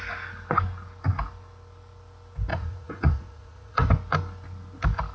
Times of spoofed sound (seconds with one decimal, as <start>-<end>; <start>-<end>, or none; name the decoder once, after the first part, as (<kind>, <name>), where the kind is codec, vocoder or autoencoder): 2.5-3.9 (vocoder, Vocos)